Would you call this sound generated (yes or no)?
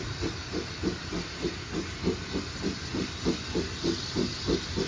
no